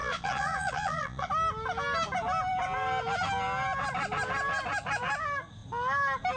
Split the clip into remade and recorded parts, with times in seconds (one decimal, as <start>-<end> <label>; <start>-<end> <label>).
0.0-1.3 remade; 1.3-6.4 recorded